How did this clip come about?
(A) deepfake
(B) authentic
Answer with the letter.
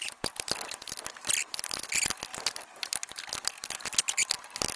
B